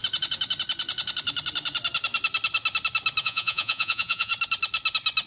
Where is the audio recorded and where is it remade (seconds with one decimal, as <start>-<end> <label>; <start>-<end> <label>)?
0.0-3.2 recorded; 3.2-4.3 remade; 4.3-5.3 recorded